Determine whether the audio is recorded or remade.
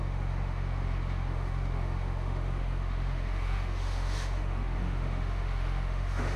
remade